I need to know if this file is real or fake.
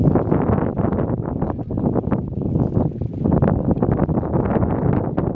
real